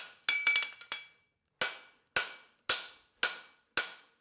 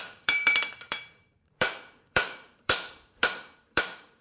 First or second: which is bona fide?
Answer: first